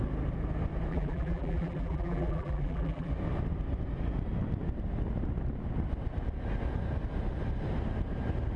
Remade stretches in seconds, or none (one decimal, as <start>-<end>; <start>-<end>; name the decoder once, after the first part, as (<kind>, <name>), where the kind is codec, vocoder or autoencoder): 0.9-3.1 (vocoder, BigVGAN v2)